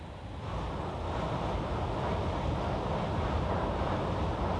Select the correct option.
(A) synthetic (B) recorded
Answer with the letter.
B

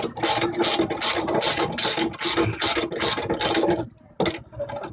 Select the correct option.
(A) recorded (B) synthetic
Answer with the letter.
A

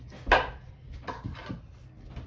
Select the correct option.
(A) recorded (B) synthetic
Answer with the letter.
A